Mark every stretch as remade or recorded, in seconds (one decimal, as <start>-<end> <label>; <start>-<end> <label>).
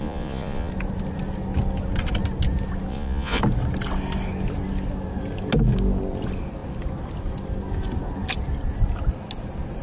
0.0-0.7 remade; 0.7-2.9 recorded; 2.9-3.4 remade; 3.4-9.8 recorded